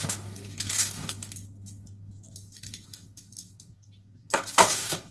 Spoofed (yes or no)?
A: yes